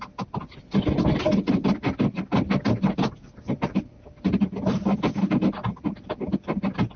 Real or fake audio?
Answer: real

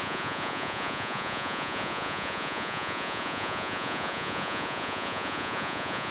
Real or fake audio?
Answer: fake